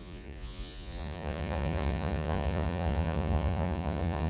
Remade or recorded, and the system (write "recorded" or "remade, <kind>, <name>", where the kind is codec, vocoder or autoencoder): remade, vocoder, Vocos